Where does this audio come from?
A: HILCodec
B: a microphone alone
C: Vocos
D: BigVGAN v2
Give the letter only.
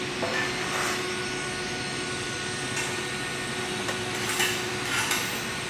B